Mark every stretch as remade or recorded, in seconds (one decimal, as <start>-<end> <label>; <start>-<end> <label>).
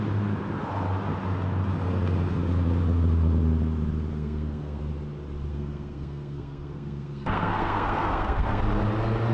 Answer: 0.0-4.1 recorded; 4.1-4.8 remade; 4.8-5.5 recorded; 5.5-8.6 remade; 8.6-9.3 recorded